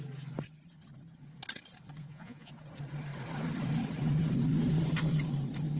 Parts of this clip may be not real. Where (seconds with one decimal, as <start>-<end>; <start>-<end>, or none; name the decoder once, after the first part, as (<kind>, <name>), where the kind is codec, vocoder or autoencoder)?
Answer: 2.0-2.5 (vocoder, Vocos)

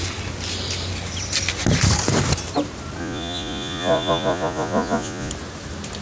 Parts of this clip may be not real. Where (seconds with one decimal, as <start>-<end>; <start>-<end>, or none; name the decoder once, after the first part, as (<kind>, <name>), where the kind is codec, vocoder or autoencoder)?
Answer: 3.0-5.3 (vocoder, Vocos)

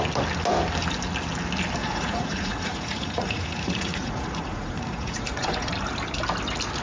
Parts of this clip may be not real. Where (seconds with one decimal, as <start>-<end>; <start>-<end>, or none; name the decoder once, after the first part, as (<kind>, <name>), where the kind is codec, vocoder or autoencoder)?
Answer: 1.8-5.7 (vocoder, Vocos)

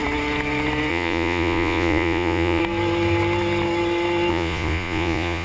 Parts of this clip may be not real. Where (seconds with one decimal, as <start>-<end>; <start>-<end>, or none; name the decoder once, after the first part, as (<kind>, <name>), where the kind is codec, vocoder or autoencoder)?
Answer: 0.9-2.6 (vocoder, Vocos); 4.3-5.4

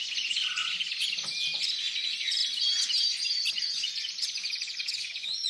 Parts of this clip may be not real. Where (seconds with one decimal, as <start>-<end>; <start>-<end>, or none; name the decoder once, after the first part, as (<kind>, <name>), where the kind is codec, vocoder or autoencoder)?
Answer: 0.0-0.6 (vocoder, Vocos); 1.6-2.4; 3.5-5.5